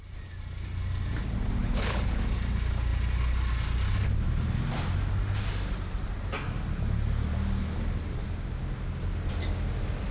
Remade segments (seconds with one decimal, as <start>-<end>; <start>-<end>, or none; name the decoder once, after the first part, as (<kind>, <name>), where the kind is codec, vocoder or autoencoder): 1.6-2.2 (codec, HILCodec)